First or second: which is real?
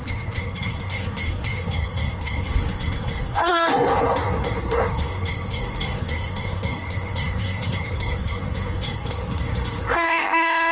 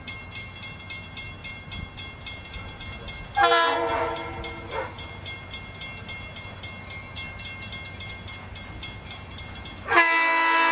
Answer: second